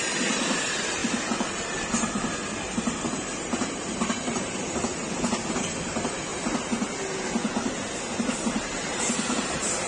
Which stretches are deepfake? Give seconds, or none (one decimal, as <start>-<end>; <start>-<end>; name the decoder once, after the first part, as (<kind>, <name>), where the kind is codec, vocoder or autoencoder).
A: 0.0-1.0 (vocoder, BigVGAN v2); 5.5-6.3; 9.3-9.9